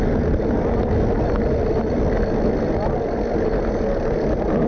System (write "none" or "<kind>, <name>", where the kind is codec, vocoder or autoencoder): none